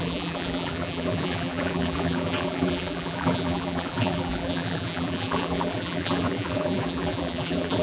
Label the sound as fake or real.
fake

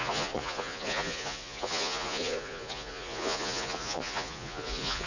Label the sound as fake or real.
fake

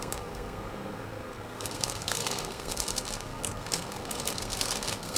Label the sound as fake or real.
fake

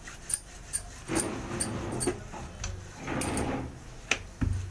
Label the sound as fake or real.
real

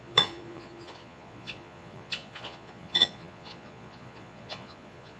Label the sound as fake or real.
fake